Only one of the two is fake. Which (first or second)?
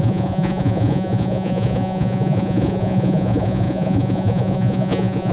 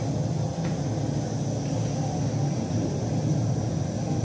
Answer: first